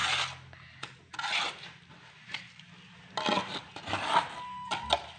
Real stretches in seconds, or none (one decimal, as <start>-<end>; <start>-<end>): 0.0-5.2